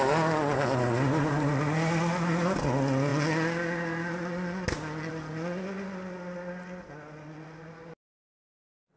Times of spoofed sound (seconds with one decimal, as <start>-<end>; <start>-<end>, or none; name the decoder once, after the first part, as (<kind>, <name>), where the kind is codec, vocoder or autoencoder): none